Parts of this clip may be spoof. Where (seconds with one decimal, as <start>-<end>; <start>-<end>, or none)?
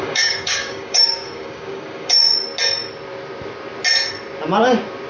0.0-2.2